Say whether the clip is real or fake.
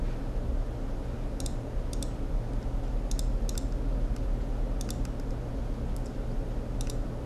real